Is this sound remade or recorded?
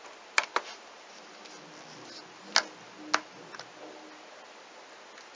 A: recorded